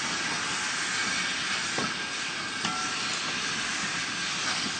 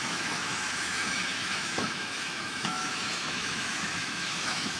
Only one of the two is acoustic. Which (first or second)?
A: first